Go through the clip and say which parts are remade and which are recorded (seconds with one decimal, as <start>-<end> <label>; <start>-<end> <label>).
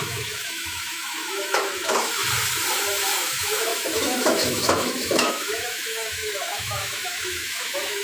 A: 0.0-2.2 remade; 2.2-3.2 recorded; 3.2-8.0 remade